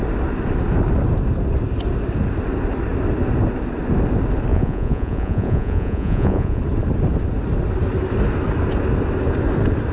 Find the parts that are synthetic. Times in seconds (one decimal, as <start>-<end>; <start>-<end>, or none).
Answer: 4.5-6.6